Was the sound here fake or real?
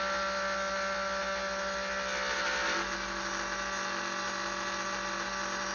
real